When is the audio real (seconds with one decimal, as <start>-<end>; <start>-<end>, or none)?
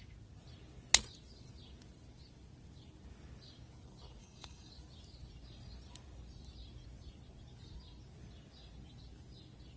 0.0-4.2; 4.7-9.8